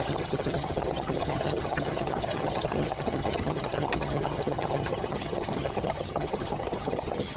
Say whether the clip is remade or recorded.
remade